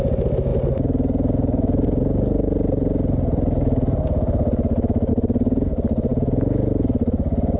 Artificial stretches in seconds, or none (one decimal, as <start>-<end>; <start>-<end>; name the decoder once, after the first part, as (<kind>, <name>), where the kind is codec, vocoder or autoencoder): none